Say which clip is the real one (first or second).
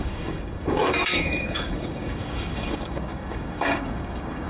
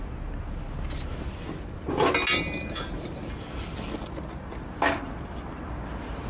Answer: second